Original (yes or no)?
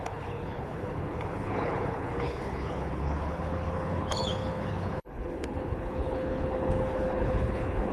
no